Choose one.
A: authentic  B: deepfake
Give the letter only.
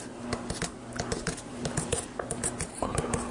A